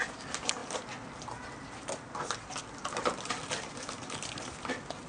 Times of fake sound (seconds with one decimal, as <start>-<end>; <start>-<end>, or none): none